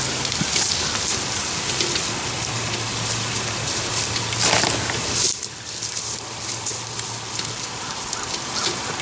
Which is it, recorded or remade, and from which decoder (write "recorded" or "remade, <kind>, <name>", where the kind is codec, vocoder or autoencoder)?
recorded